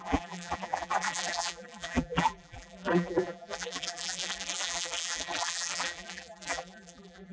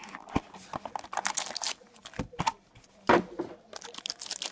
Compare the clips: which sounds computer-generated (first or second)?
first